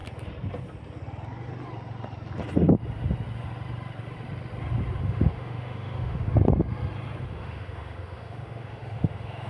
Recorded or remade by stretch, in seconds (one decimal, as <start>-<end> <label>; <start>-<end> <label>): 0.0-5.0 recorded; 5.0-6.3 remade; 6.3-7.2 recorded; 7.2-9.5 remade